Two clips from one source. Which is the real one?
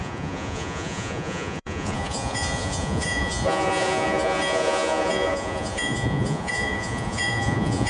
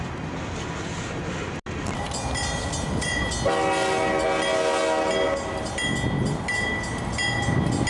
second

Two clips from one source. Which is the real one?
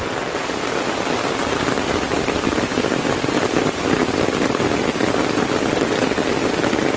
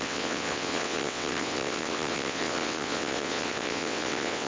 first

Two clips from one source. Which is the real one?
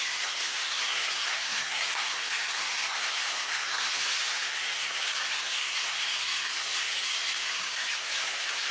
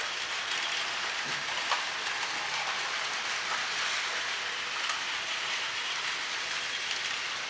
second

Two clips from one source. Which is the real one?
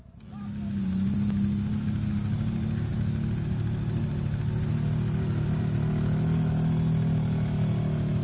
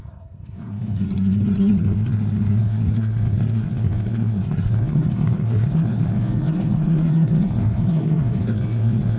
first